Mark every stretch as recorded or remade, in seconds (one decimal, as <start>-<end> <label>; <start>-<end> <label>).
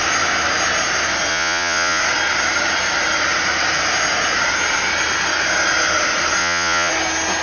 0.0-1.3 recorded; 1.3-2.0 remade; 2.0-6.4 recorded; 6.4-6.9 remade; 6.9-7.4 recorded